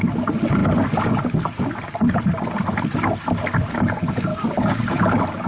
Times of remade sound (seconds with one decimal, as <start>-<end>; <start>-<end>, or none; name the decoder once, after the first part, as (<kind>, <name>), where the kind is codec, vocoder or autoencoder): 4.3-4.8 (codec, DAC)